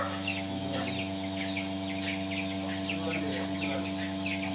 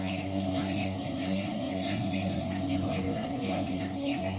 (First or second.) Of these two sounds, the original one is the first